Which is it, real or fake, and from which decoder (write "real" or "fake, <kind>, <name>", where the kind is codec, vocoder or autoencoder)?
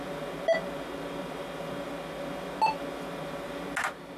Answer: real